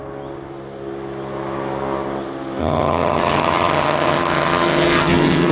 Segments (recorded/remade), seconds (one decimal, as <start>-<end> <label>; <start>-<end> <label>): 0.0-2.6 recorded; 2.6-5.5 remade